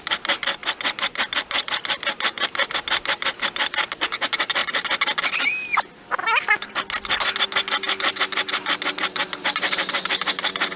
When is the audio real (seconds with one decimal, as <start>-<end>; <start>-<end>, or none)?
0.0-10.8